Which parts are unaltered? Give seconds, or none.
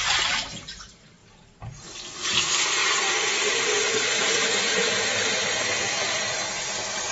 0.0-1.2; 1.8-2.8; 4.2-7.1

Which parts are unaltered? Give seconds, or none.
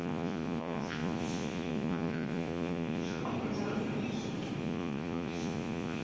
3.2-4.6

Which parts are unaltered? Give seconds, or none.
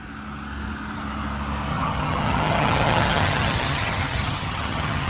0.0-1.7